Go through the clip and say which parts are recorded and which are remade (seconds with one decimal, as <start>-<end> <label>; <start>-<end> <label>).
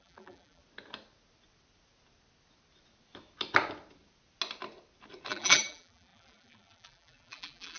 0.0-0.6 remade; 0.6-5.3 recorded; 5.3-7.8 remade